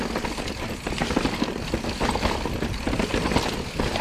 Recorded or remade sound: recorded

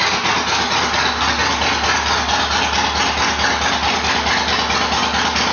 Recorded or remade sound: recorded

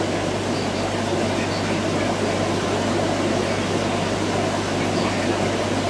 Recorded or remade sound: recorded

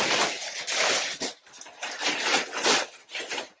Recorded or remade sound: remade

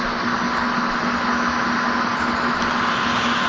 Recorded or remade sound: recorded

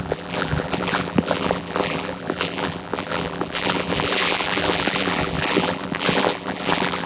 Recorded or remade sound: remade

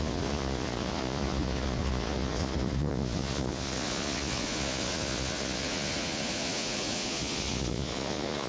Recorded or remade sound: remade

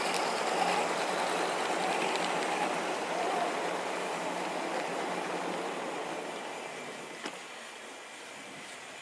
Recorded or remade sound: recorded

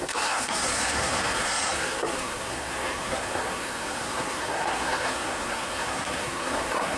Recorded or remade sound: remade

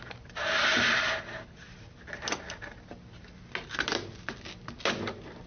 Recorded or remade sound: recorded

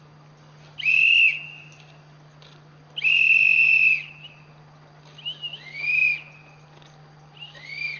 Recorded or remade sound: recorded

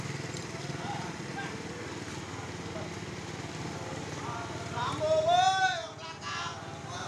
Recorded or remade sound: recorded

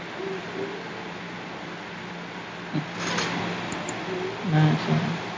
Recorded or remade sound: recorded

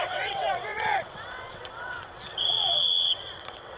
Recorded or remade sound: remade